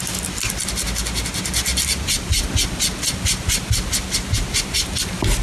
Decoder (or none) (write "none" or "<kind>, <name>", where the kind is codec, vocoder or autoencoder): none